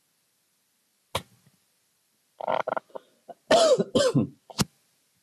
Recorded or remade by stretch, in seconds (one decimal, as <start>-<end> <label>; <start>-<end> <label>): 0.0-5.2 recorded